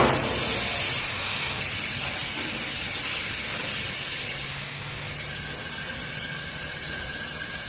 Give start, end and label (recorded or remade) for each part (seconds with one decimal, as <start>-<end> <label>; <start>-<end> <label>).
0.0-1.0 recorded; 1.0-1.6 remade; 1.6-4.5 recorded; 4.5-5.1 remade; 5.1-7.7 recorded